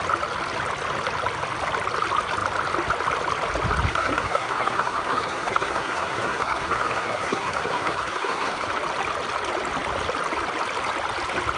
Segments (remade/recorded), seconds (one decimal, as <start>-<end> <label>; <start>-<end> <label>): 0.0-3.9 recorded; 3.9-8.7 remade; 8.7-11.6 recorded